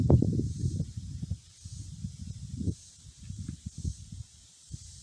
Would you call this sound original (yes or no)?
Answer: no